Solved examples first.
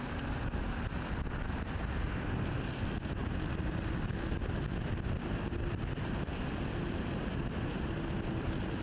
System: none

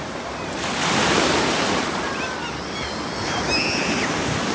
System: none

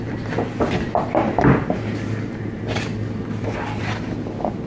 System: none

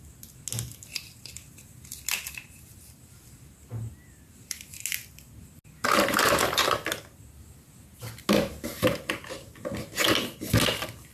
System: none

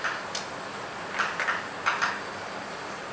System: none